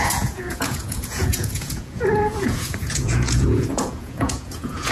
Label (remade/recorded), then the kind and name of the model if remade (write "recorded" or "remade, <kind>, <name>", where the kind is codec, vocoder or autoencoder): remade, vocoder, Vocos